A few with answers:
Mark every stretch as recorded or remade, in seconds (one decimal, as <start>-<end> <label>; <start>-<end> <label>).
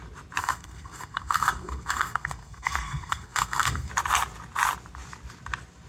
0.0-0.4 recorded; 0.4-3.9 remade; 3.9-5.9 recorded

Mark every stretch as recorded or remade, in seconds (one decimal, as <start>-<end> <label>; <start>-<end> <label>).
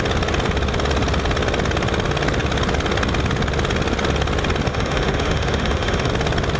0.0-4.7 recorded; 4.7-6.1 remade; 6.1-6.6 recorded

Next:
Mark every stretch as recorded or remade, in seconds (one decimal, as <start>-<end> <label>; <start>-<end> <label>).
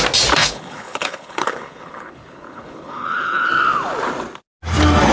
0.0-0.4 recorded; 0.4-3.5 remade; 3.5-5.1 recorded